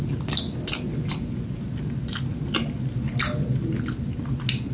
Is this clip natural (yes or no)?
yes